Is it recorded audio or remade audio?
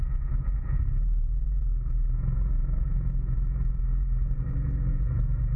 remade